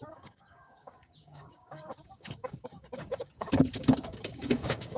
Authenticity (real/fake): fake